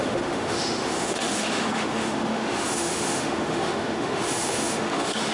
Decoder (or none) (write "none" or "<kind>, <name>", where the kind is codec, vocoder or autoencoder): autoencoder, DAC-VAE